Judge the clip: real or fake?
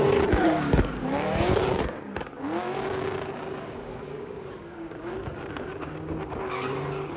fake